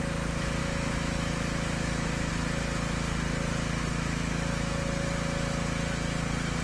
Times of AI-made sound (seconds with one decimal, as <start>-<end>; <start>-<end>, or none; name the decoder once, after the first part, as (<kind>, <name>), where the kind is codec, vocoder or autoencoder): 0.6-2.3 (autoencoder, DAC-VAE); 3.8-4.7